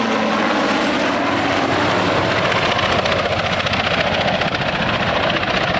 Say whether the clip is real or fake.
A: real